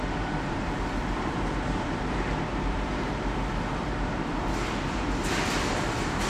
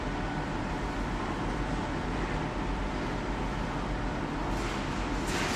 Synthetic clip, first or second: first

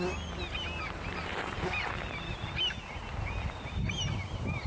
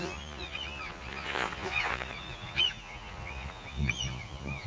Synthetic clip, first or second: second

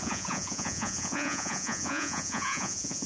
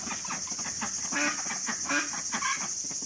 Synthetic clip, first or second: first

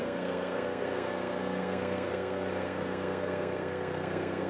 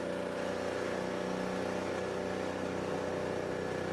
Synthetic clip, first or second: first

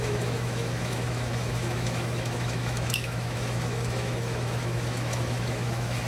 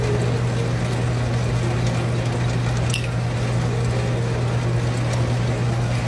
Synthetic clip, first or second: first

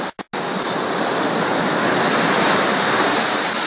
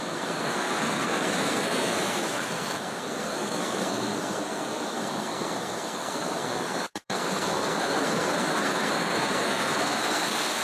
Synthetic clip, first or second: second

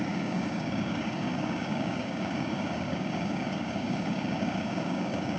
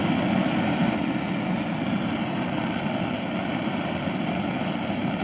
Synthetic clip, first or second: first